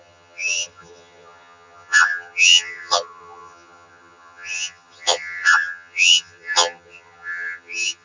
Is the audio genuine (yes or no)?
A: no